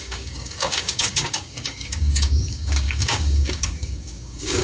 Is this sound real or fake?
fake